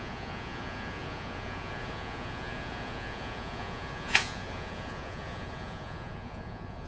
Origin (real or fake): fake